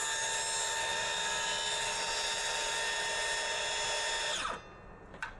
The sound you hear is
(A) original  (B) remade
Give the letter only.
A